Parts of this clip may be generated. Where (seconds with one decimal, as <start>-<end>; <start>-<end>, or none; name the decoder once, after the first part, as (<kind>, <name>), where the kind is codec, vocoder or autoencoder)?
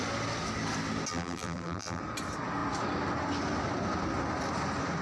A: 1.1-2.0 (vocoder, BigVGAN v2)